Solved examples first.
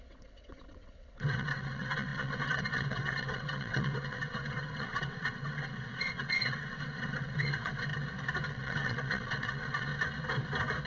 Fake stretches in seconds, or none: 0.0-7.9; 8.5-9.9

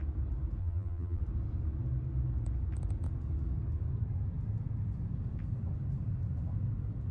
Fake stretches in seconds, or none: 0.6-1.2